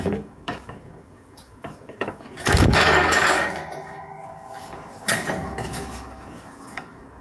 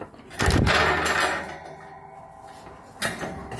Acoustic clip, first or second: second